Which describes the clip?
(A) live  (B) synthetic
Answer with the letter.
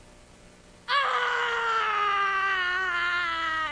A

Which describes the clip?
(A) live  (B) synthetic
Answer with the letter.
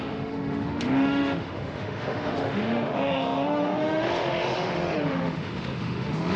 B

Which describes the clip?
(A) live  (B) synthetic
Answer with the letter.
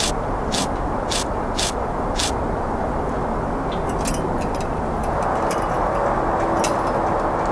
A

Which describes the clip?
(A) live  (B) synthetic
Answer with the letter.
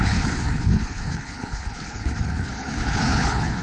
B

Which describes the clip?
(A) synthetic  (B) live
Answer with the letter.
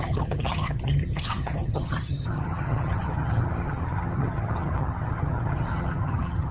A